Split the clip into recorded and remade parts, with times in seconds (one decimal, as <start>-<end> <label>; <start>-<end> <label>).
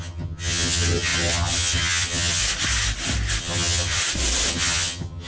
0.0-2.4 remade; 2.4-3.4 recorded; 3.4-4.0 remade; 4.0-4.5 recorded; 4.5-5.3 remade